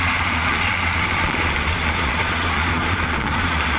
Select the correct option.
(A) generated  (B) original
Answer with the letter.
A